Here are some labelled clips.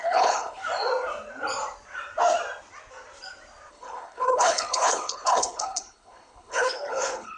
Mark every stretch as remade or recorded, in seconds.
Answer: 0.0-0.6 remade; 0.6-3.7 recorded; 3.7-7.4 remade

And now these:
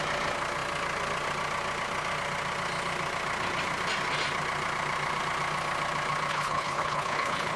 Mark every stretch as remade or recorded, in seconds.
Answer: 0.0-6.3 recorded; 6.3-7.6 remade

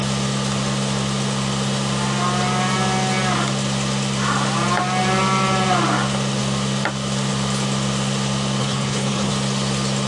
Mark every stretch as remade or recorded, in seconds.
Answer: 0.0-8.6 recorded; 8.6-9.3 remade; 9.3-10.1 recorded

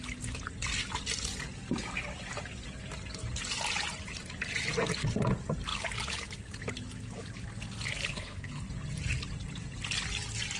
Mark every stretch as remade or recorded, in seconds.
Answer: 0.0-8.1 recorded; 8.1-8.7 remade; 8.7-10.6 recorded

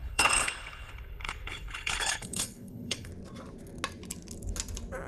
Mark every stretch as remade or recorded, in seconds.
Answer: 0.0-3.1 remade; 3.1-5.1 recorded

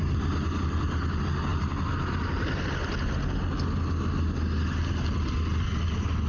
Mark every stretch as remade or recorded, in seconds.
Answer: 0.0-6.3 recorded

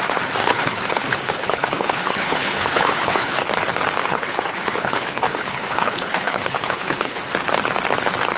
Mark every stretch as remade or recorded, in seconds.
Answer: 0.0-0.4 recorded; 0.4-3.5 remade; 3.5-4.0 recorded; 4.0-7.2 remade; 7.2-8.4 recorded